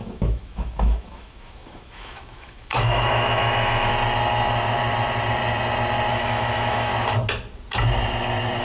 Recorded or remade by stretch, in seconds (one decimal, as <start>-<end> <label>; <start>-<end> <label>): 0.0-3.9 remade; 3.9-6.1 recorded; 6.1-6.9 remade; 6.9-8.6 recorded